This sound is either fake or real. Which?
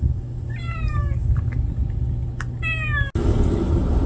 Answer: real